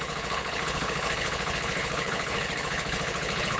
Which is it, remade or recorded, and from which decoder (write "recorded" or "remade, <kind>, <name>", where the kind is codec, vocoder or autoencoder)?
remade, codec, HILCodec